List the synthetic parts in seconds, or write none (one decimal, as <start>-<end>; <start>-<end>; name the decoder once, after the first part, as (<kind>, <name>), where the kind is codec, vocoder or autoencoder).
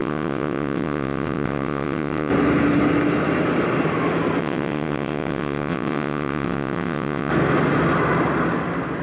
0.0-2.3 (vocoder, WaveNeXt); 4.4-7.3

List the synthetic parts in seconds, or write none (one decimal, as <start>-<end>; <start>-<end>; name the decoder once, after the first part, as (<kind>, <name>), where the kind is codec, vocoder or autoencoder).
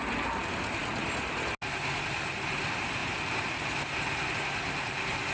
none